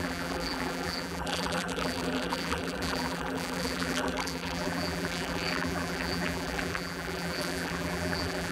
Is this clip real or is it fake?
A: fake